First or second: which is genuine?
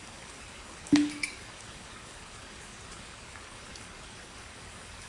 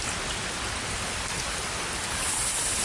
second